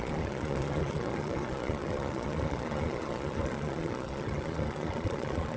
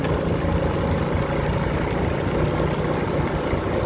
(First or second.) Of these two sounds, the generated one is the first